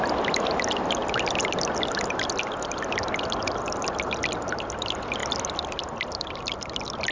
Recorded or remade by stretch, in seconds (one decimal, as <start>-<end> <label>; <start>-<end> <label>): 0.0-7.1 recorded